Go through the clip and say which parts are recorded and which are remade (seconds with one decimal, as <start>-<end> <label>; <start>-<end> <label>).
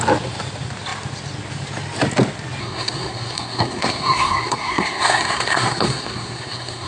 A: 0.0-2.6 recorded; 2.6-6.9 remade